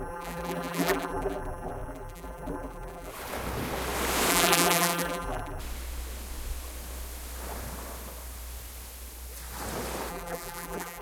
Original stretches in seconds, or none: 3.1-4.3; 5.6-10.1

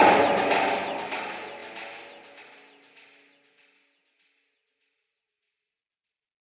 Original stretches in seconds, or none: 0.0-6.5

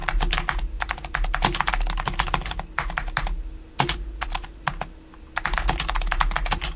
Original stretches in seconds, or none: 0.0-6.8

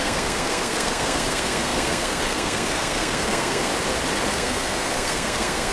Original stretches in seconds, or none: 3.7-4.3

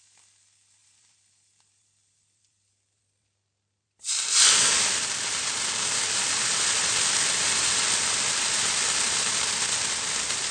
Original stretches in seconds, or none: 0.0-0.8; 5.7-10.5

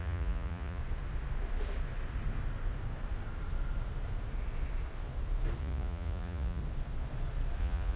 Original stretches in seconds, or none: 0.8-5.6; 6.6-7.6

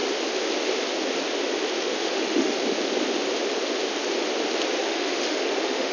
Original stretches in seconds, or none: 0.0-1.8; 2.6-4.8

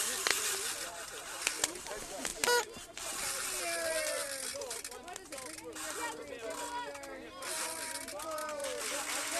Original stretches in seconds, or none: 0.0-9.4